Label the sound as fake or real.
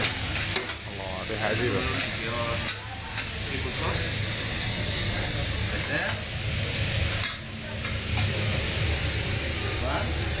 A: real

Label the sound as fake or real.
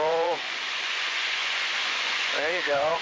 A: fake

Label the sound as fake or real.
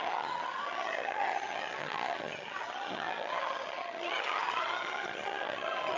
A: fake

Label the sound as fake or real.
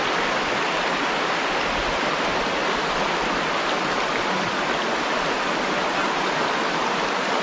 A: real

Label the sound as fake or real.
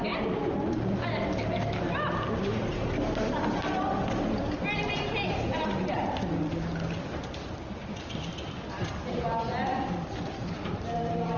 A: real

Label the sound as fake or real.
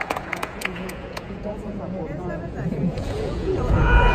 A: fake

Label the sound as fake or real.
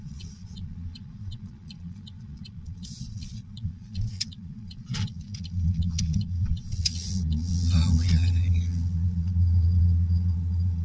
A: fake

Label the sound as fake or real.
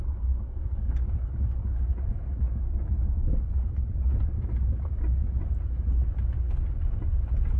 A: real